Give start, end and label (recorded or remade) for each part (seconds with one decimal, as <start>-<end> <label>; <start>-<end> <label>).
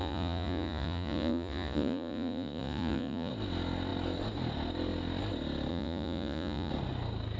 0.0-3.3 remade; 3.3-5.7 recorded; 5.7-6.7 remade; 6.7-7.4 recorded